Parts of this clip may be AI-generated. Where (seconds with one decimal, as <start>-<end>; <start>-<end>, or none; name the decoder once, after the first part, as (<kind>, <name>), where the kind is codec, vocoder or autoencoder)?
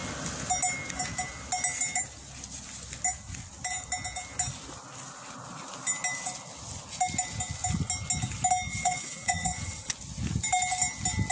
8.7-9.9 (vocoder, WaveNeXt)